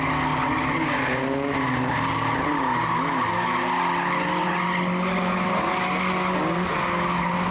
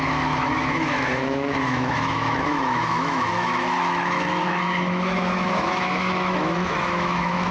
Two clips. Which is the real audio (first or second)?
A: first